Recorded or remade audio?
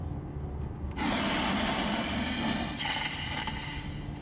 recorded